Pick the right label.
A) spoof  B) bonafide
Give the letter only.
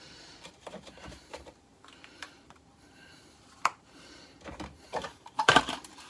A